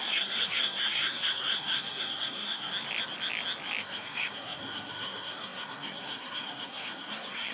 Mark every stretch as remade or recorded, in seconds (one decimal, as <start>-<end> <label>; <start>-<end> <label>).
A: 0.0-2.7 remade; 2.7-3.8 recorded; 3.8-7.5 remade